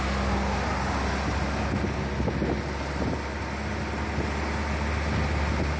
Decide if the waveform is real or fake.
real